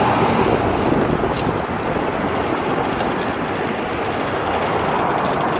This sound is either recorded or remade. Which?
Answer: recorded